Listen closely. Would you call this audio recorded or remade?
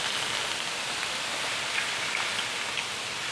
recorded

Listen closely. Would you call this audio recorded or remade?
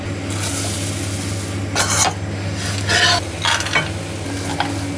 recorded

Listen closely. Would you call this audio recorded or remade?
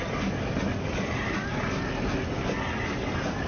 recorded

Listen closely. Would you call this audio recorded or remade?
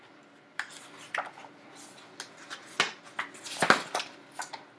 recorded